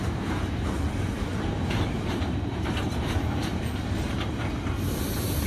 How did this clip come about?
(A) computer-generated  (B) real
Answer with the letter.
A